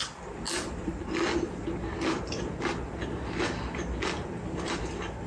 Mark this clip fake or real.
real